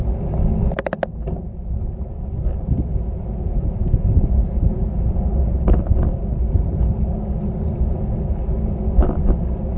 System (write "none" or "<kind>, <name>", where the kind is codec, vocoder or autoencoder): none